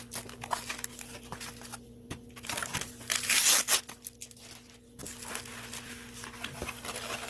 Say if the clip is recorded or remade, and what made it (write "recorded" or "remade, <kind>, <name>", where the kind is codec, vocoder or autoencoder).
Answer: recorded